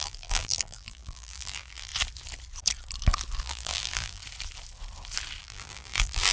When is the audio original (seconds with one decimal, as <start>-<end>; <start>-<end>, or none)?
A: 1.9-3.4; 4.2-5.4